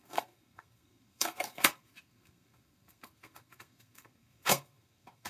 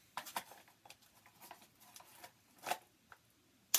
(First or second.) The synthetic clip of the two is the first